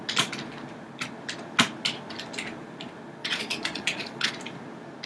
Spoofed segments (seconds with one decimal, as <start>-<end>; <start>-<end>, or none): 3.2-4.3